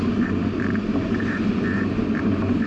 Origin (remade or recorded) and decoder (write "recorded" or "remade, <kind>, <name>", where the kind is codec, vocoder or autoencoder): remade, vocoder, BigVGAN v2